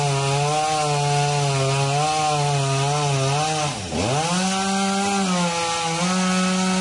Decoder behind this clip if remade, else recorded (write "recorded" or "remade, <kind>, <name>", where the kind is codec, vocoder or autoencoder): recorded